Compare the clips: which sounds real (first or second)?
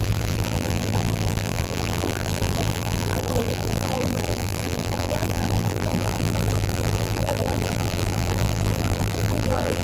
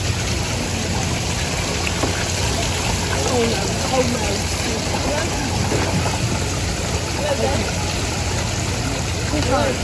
second